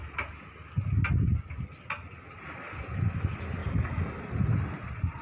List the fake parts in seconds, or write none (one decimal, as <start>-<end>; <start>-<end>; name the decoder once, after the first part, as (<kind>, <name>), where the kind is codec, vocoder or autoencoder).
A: 3.6-4.2 (codec, DAC)